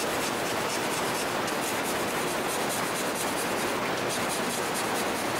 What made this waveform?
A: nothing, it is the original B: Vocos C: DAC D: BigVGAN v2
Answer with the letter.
A